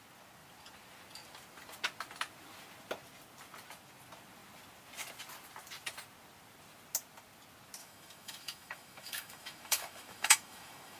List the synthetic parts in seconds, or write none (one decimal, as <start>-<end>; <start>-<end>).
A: 7.8-11.0